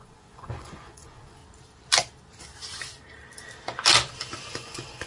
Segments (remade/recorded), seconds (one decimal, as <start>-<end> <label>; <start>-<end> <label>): 0.0-1.4 remade; 1.4-4.5 recorded; 4.5-5.1 remade